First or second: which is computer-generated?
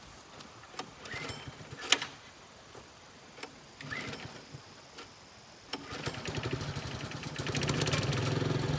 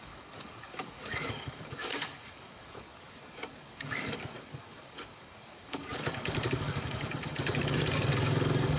second